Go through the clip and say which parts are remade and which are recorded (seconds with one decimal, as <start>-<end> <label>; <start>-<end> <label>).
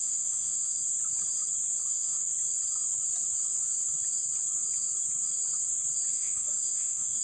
0.0-0.8 remade; 0.8-1.9 recorded; 1.9-2.3 remade; 2.3-6.1 recorded; 6.1-7.2 remade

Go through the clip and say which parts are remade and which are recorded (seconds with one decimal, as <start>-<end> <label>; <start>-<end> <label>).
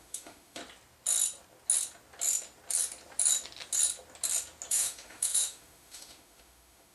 0.0-0.6 remade; 0.6-4.7 recorded; 4.7-6.9 remade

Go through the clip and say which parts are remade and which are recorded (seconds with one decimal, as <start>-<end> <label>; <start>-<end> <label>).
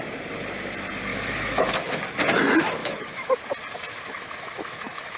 0.0-1.1 recorded; 1.1-2.0 remade; 2.0-2.8 recorded; 2.8-3.4 remade; 3.4-3.9 recorded; 3.9-5.2 remade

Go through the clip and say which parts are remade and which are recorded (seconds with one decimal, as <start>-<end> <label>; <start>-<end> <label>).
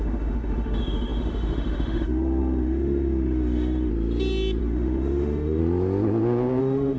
0.0-3.9 remade; 3.9-4.6 recorded; 4.6-5.6 remade; 5.6-6.6 recorded; 6.6-7.0 remade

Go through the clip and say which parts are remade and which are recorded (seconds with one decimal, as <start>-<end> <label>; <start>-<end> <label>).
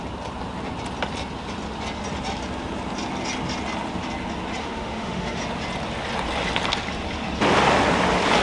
0.0-4.6 recorded; 4.6-5.4 remade; 5.4-8.4 recorded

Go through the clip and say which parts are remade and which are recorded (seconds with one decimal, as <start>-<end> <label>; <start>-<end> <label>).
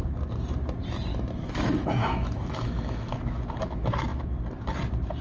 0.0-1.1 recorded; 1.1-3.4 remade; 3.4-5.2 recorded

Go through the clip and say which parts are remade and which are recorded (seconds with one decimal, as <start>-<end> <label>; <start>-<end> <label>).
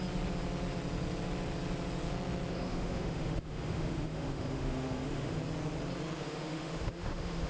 0.0-2.5 recorded; 2.5-5.4 remade; 5.4-6.2 recorded; 6.2-7.5 remade